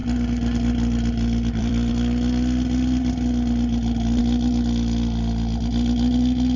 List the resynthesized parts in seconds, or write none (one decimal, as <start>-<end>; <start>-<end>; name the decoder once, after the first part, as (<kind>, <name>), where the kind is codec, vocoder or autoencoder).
0.0-1.9 (vocoder, BigVGAN v2)